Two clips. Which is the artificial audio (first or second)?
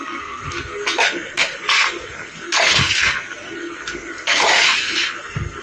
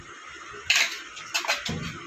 first